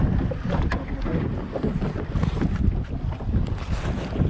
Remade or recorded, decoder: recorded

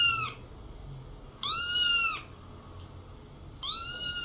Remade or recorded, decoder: recorded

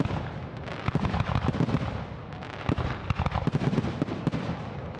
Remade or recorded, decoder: recorded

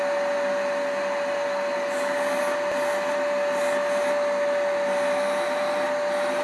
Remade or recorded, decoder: recorded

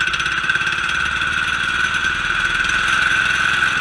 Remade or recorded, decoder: recorded